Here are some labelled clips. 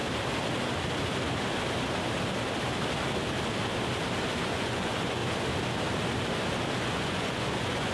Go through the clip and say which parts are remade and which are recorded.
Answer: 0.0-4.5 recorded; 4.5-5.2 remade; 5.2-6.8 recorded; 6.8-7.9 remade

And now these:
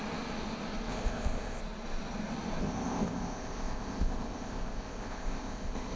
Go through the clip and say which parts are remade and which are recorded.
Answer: 0.0-0.9 recorded; 0.9-1.6 remade; 1.6-2.6 recorded; 2.6-6.0 remade

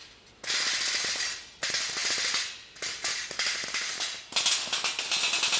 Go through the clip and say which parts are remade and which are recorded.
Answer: 0.0-5.6 recorded